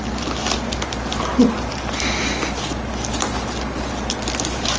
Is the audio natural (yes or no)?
yes